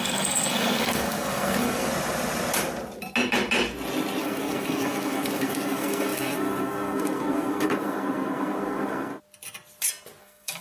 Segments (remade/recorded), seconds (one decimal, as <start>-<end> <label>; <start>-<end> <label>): 0.0-1.9 remade; 1.9-4.2 recorded; 4.2-9.1 remade; 9.1-10.2 recorded; 10.2-10.6 remade